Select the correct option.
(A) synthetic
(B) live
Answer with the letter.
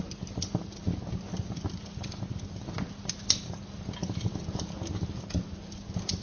B